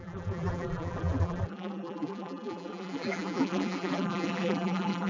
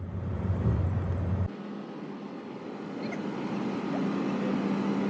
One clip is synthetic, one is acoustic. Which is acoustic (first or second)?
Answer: second